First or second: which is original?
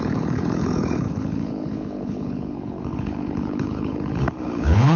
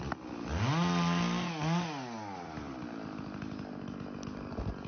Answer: second